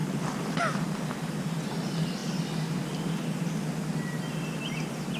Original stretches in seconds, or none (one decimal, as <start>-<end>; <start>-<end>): 0.0-5.2